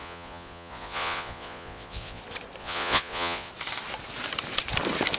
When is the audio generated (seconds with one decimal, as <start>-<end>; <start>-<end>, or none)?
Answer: 0.0-2.2; 2.6-3.5